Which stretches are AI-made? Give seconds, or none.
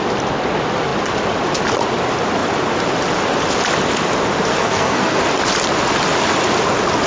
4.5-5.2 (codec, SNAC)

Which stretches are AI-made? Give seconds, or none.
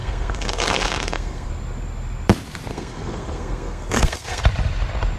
0.0-1.5 (codec, SNAC); 2.7-4.4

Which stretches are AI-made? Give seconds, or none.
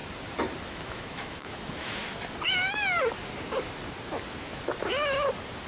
0.6-2.0 (autoencoder, DAC-VAE)